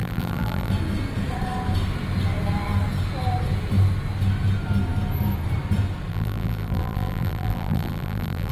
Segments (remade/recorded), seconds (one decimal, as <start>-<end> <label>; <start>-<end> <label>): 0.0-0.7 remade; 0.7-6.1 recorded; 6.1-8.5 remade